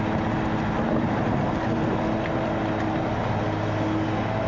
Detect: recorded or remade recorded